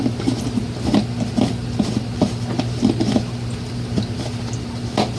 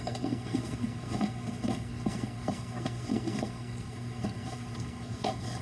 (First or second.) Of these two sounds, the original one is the first